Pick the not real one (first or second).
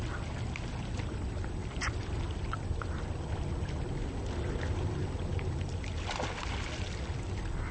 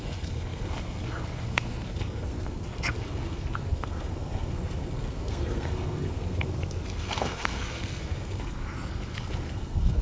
second